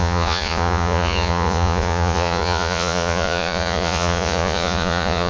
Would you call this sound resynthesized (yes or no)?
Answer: yes